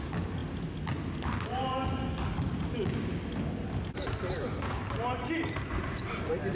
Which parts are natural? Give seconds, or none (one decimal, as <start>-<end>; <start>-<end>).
0.0-6.5